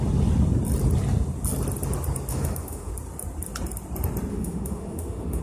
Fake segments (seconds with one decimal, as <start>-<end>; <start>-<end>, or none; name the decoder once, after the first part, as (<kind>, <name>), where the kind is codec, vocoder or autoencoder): 2.3-2.9 (autoencoder, DAC-VAE); 4.3-5.4